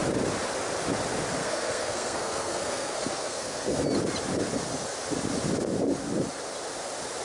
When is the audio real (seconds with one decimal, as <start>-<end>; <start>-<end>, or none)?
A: 0.0-1.4; 3.8-7.2